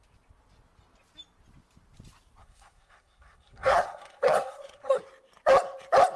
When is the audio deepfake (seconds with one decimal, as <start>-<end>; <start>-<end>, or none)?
2.4-5.0